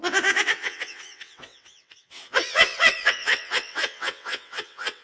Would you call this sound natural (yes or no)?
no